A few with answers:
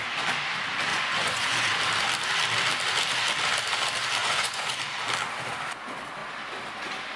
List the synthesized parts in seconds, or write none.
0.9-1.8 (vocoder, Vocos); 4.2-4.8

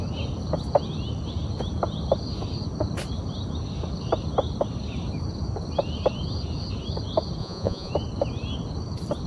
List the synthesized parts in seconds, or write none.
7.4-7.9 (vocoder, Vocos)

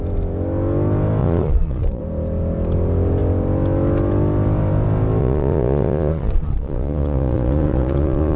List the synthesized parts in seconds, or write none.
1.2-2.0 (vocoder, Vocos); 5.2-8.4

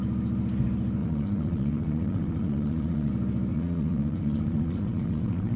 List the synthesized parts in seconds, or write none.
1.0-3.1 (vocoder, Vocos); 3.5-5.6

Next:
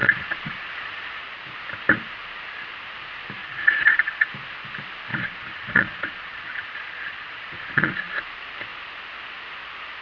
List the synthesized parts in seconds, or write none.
0.0-1.2 (vocoder, Vocos); 3.4-4.3; 5.1-8.1

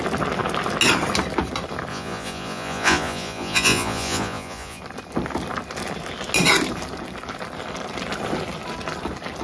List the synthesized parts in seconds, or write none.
1.9-4.8 (vocoder, Vocos)

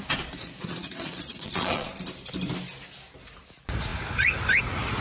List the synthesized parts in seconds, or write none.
0.4-1.9 (vocoder, Vocos)

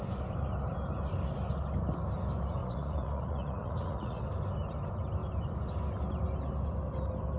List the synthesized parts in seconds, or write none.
2.6-4.2 (vocoder, Vocos)